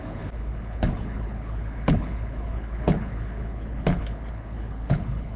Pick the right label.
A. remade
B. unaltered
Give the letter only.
A